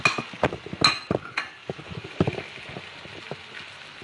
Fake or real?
real